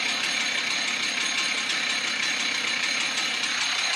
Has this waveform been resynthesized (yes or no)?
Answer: no